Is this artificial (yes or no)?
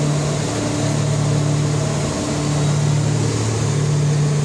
no